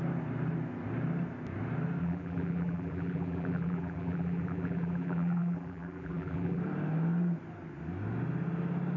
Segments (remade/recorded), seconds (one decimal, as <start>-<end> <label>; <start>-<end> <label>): 0.0-2.0 recorded; 2.0-6.6 remade; 6.6-9.0 recorded